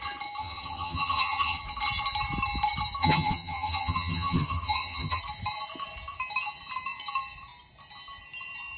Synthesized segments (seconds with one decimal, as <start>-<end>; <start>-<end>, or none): 0.4-1.6; 3.0-5.2